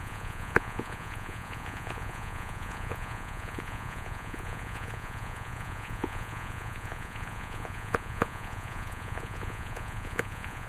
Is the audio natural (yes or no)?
no